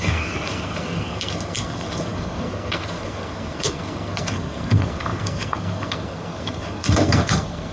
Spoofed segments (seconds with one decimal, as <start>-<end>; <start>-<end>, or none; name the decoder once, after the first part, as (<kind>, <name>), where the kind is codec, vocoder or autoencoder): 0.0-7.7 (codec, SNAC)